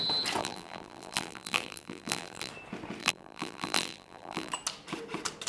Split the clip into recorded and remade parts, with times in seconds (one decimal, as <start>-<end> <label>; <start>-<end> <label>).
0.0-0.4 recorded; 0.4-2.5 remade; 2.5-3.0 recorded; 3.0-4.5 remade; 4.5-5.5 recorded